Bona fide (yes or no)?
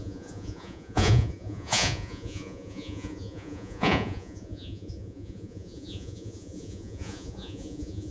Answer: no